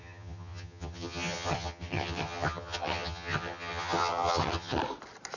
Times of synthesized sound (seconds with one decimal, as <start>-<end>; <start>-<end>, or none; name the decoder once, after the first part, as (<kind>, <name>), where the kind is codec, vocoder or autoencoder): 0.0-4.8 (vocoder, HiFi-GAN)

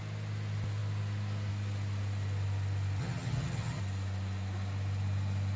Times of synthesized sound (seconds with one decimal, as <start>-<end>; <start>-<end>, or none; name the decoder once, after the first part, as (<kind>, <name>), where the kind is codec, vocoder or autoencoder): 3.0-3.8 (vocoder, HiFi-GAN)

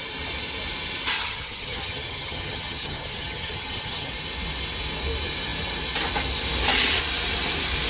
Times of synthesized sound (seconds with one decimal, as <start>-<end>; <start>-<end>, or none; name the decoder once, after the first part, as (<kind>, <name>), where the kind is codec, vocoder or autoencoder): 1.2-4.1 (vocoder, HiFi-GAN)

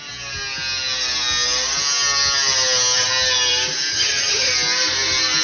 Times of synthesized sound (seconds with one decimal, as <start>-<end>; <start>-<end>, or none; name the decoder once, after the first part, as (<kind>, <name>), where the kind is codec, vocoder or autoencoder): 3.9-4.5 (vocoder, HiFi-GAN)

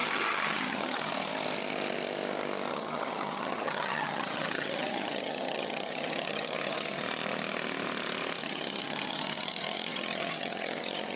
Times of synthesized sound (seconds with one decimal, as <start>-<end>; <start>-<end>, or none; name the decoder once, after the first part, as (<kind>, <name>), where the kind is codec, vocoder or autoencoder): 0.0-1.1 (vocoder, HiFi-GAN); 2.7-7.0; 8.4-11.2